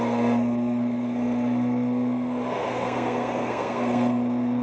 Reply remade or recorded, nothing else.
remade